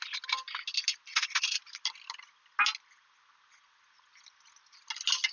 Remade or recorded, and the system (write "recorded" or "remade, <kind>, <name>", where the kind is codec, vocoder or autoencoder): recorded